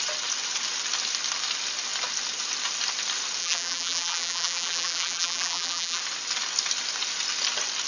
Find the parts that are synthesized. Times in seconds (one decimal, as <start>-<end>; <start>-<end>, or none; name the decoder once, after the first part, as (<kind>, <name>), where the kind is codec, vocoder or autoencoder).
3.4-6.0 (vocoder, BigVGAN v2)